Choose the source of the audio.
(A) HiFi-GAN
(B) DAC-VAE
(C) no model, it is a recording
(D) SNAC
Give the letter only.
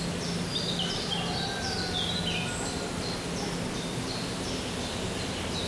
C